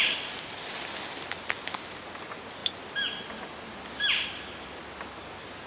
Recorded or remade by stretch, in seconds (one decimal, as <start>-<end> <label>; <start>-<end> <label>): 0.0-5.7 recorded